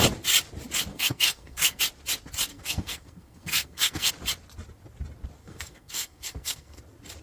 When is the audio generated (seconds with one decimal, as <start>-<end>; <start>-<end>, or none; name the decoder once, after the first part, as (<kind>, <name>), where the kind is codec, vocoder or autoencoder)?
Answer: 0.9-1.8 (codec, SNAC); 2.5-4.1; 5.4-6.8